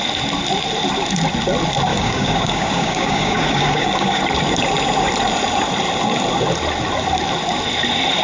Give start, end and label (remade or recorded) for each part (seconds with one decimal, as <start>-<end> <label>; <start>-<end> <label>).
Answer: 0.0-1.9 recorded; 1.9-4.2 remade; 4.2-8.2 recorded